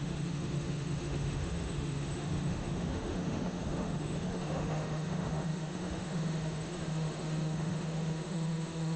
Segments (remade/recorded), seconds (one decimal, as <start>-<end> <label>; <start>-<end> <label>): 0.0-9.0 remade